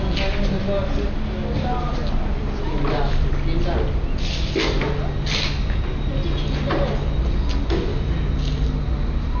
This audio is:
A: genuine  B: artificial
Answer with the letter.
A